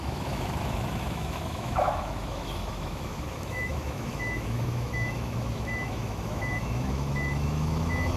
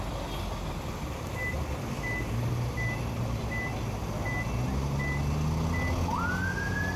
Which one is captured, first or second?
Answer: second